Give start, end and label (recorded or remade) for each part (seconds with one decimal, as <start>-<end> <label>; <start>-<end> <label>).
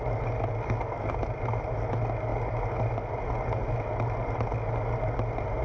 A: 0.0-5.6 recorded